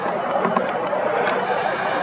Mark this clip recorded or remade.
recorded